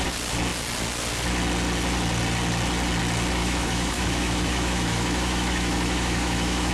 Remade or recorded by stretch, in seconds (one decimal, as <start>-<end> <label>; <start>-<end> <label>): 0.0-3.4 recorded; 3.4-6.7 remade

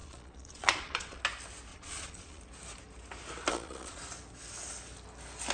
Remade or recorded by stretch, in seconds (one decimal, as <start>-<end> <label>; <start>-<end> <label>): 0.0-1.2 remade; 1.2-1.7 recorded; 1.7-2.4 remade; 2.4-3.5 recorded; 3.5-4.0 remade; 4.0-5.5 recorded